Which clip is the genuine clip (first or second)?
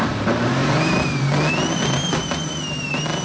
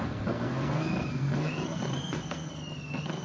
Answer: first